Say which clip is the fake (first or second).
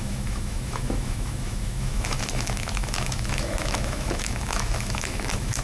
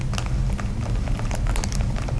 first